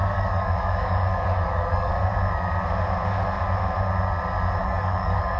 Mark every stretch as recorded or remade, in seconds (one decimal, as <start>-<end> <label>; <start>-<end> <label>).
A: 0.0-1.9 remade; 1.9-4.6 recorded; 4.6-5.4 remade